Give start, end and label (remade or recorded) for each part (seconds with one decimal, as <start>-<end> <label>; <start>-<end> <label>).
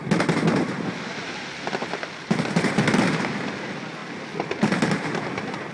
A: 0.0-5.7 recorded